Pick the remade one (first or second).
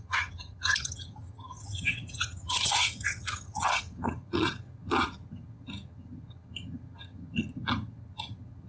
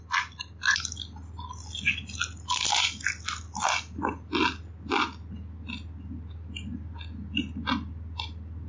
first